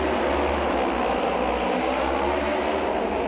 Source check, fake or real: real